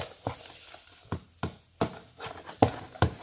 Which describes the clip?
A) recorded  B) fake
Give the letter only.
A